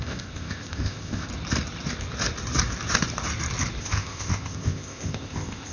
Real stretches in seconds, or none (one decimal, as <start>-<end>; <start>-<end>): 1.3-3.8